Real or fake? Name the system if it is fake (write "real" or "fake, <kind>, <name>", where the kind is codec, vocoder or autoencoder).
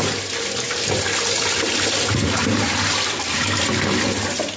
real